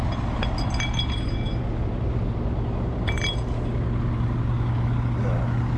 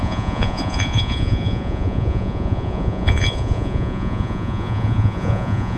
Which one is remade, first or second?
second